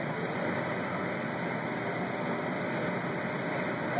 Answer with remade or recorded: recorded